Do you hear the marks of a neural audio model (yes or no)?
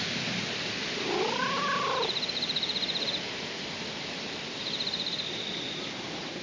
no